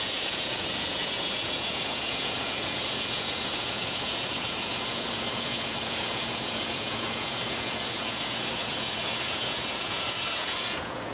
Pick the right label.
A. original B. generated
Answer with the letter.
B